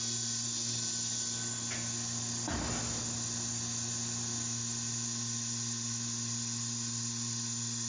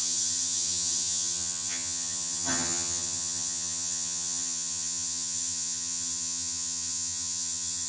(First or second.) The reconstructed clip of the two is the second